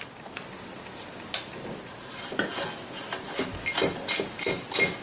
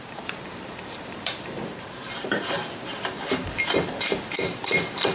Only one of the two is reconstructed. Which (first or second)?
second